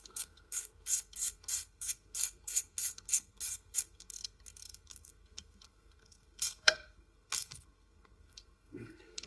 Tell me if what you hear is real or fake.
fake